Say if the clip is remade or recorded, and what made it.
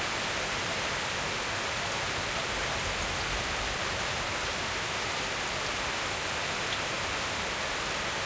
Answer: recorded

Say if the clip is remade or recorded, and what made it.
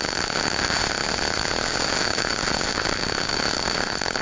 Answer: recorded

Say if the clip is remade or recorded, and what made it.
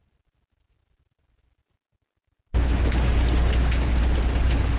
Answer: recorded